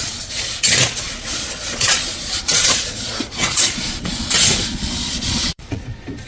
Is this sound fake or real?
fake